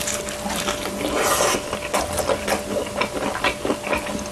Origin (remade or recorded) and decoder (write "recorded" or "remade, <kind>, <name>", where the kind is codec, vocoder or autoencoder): recorded